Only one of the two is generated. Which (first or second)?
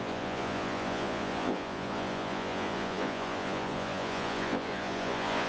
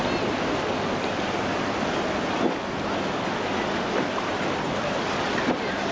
first